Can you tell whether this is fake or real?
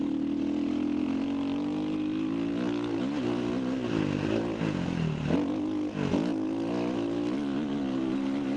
real